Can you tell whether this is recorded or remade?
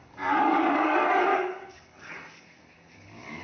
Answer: remade